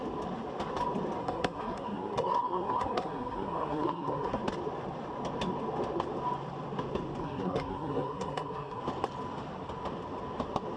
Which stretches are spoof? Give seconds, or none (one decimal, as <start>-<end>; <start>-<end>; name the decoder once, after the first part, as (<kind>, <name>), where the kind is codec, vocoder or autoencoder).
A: 1.2-4.4 (codec, SNAC); 7.2-8.8

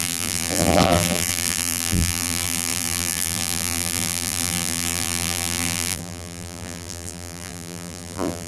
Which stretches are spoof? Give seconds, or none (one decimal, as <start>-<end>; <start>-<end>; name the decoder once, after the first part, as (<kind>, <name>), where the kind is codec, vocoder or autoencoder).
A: 0.0-8.5 (vocoder, BigVGAN v2)

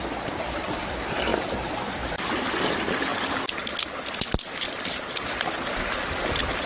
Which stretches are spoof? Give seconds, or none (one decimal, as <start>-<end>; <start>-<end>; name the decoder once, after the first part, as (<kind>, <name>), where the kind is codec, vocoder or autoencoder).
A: none

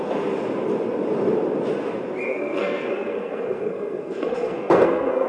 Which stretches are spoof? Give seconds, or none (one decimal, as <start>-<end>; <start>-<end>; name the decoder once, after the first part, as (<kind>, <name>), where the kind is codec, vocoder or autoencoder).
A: 2.3-5.3 (codec, SNAC)

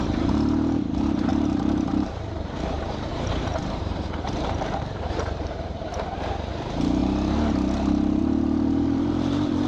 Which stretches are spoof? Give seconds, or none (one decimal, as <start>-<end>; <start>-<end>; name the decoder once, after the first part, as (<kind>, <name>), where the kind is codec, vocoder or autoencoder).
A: 0.0-7.0 (vocoder, BigVGAN v2); 8.2-9.7

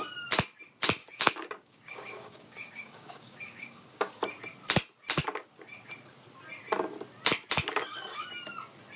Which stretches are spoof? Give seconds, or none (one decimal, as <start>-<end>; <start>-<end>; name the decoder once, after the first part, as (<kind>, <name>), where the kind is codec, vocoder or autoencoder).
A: 1.0-4.2 (codec, DAC)

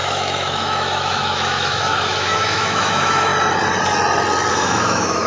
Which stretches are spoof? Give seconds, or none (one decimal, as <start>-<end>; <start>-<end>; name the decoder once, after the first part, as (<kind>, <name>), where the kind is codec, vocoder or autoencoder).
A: 0.0-3.3 (autoencoder, DAC-VAE); 4.5-5.3

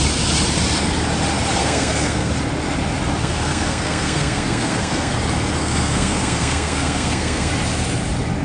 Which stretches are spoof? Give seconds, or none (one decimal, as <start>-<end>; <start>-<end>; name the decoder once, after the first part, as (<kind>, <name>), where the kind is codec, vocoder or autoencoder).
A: 1.6-2.3 (codec, SNAC); 3.2-5.1; 5.6-7.5